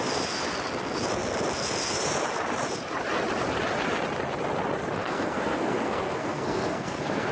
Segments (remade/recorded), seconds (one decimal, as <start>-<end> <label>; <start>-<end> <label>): 0.0-5.0 recorded; 5.0-7.3 remade